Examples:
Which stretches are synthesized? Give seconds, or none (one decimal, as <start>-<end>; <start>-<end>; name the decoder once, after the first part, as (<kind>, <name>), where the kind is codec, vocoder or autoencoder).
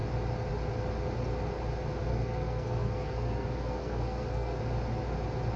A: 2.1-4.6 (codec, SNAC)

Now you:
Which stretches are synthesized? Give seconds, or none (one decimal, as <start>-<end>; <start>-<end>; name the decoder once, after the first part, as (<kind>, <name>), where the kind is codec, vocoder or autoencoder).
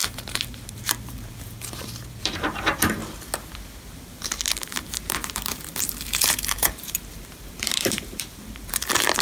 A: 0.0-3.0 (vocoder, BigVGAN v2); 3.9-9.2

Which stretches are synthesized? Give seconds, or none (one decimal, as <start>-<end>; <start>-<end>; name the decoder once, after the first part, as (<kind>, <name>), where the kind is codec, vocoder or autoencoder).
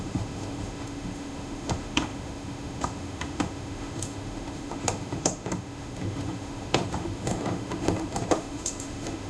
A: 0.0-9.3 (autoencoder, DAC-VAE)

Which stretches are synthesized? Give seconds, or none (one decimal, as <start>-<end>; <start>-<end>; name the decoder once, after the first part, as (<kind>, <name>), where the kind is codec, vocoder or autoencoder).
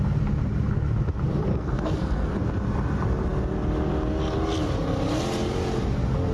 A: 1.5-2.3 (codec, SNAC)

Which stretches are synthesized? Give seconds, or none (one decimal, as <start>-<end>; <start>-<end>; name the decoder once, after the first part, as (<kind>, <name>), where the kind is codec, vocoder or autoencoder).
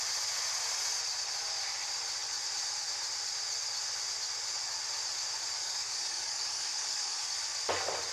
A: 5.6-7.2 (codec, DAC)